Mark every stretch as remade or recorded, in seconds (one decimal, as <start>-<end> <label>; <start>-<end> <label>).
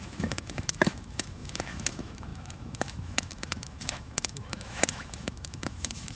0.0-6.2 remade